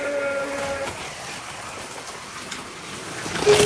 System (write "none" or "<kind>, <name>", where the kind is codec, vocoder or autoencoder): none